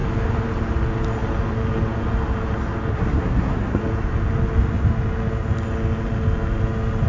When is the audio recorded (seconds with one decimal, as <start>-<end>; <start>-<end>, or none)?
0.0-2.9; 3.8-7.1